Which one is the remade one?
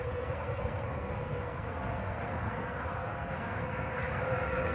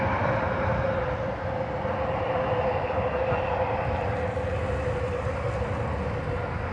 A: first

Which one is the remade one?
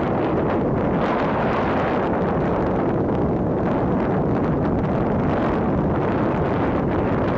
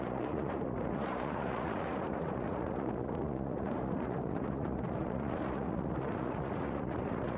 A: second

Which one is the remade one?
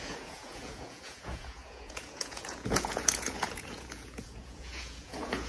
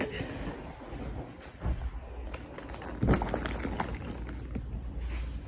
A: first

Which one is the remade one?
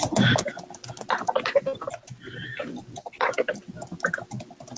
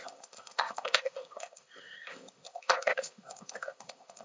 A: second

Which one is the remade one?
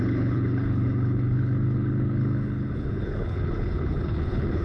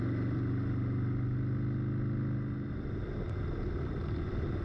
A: first